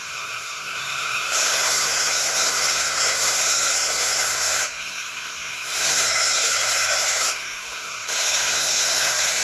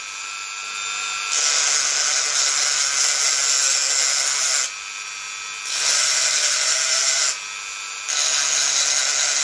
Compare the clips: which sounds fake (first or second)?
first